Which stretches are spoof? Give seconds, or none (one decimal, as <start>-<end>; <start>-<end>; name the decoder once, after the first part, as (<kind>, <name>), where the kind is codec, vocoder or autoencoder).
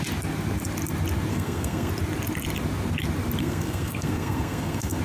1.3-1.9 (codec, SNAC); 3.4-5.0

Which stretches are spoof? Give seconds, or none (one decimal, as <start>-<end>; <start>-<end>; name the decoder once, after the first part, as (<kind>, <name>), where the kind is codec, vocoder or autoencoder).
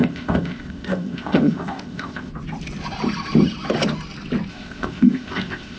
0.0-2.3 (codec, ZipCodec); 4.5-5.8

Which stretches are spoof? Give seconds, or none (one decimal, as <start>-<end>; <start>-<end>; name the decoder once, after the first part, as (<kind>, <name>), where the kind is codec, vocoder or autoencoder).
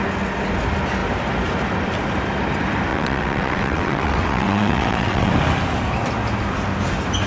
2.9-5.3 (vocoder, WaveNeXt)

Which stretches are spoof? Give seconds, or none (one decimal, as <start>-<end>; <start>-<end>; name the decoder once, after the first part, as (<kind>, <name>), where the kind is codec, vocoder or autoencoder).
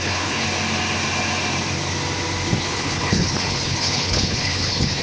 0.0-0.4 (codec, HILCodec); 2.6-5.0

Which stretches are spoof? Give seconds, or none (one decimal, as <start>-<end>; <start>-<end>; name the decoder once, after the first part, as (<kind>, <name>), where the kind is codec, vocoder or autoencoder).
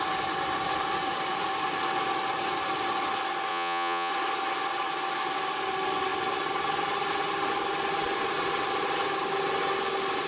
3.5-4.1 (vocoder, Vocos)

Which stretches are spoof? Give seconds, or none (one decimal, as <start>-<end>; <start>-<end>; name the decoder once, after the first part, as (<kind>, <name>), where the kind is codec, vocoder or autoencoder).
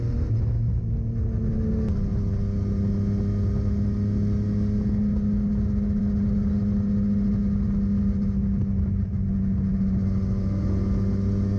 none